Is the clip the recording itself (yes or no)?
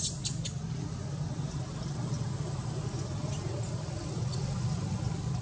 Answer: yes